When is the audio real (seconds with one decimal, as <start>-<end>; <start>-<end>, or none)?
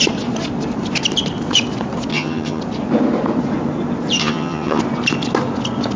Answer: 0.0-2.1; 2.6-4.2; 4.8-6.0